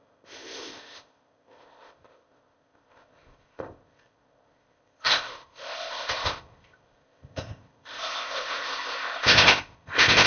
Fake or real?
fake